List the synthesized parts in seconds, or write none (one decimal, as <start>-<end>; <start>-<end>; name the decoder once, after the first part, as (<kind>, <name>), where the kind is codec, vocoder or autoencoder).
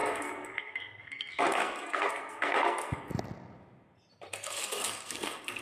0.0-3.1 (codec, SNAC); 4.3-5.6